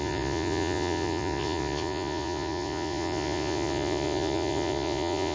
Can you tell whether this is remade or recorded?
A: remade